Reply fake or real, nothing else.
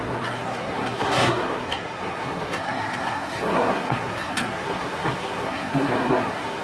fake